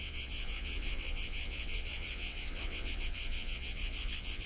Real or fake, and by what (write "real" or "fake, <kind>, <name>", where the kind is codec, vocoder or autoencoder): fake, vocoder, WaveNeXt